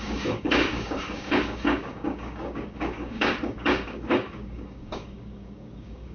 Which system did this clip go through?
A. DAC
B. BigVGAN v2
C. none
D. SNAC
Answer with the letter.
A